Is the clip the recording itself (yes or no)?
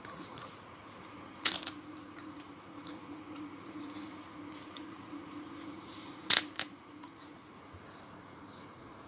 no